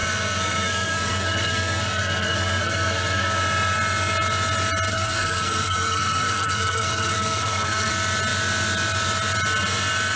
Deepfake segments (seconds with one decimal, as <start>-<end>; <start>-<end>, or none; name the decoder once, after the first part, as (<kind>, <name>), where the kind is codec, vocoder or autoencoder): 0.0-3.4 (codec, SNAC); 4.9-7.9